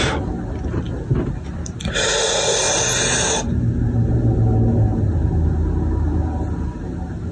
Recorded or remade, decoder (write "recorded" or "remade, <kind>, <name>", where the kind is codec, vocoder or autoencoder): recorded